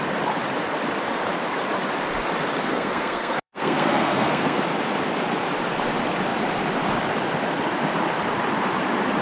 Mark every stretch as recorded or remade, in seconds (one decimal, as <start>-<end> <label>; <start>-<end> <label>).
0.0-2.7 recorded; 2.7-4.6 remade; 4.6-9.2 recorded